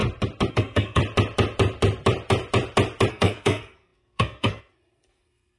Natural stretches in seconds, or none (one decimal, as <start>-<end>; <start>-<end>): 0.0-0.5; 1.0-3.1